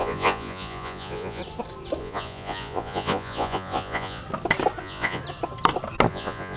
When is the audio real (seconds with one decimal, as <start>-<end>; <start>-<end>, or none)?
1.4-2.0; 4.2-4.8; 5.2-6.1